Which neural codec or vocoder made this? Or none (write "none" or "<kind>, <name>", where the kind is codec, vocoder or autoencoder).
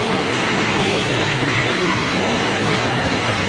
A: codec, SNAC